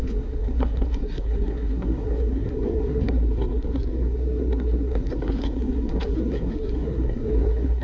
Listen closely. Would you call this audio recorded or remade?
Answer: remade